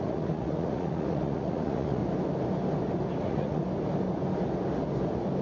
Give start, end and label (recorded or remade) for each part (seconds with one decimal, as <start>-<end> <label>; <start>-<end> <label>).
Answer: 0.0-2.0 remade; 2.0-3.2 recorded; 3.2-3.6 remade; 3.6-5.4 recorded